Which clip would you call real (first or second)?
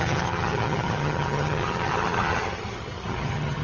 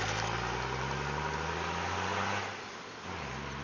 second